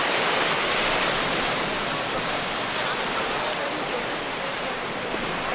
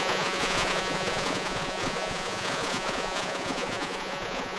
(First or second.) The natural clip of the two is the first